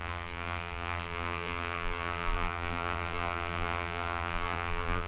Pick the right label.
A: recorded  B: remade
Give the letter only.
B